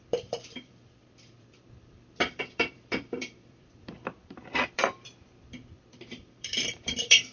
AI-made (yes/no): yes